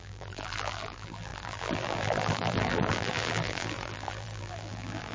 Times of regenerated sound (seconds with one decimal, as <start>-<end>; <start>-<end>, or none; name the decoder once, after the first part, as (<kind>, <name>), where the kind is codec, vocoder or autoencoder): 0.0-5.1 (vocoder, BigVGAN v2)